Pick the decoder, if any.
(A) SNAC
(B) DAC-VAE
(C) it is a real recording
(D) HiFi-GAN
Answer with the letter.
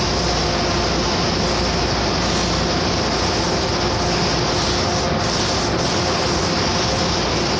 C